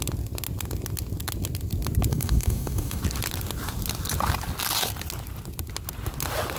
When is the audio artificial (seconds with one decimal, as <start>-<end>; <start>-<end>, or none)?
2.1-3.0